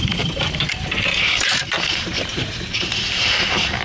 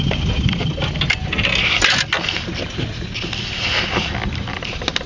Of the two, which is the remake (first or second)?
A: first